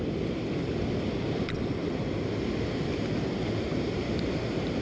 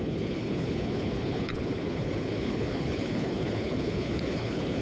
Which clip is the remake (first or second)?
second